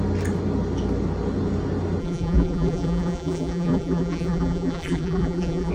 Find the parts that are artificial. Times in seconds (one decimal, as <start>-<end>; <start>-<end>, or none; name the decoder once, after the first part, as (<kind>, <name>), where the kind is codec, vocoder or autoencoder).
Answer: 2.0-5.7 (vocoder, BigVGAN v2)